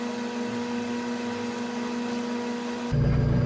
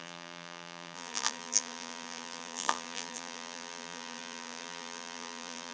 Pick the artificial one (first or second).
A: second